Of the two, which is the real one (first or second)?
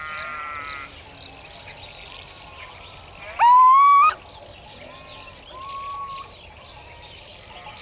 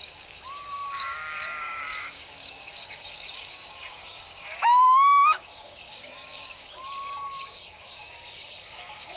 first